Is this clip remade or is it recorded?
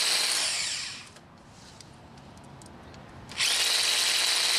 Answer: recorded